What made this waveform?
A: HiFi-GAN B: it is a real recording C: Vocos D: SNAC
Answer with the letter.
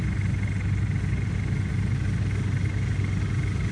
B